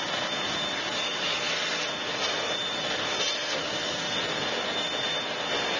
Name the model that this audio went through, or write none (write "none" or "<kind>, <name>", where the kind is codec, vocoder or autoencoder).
none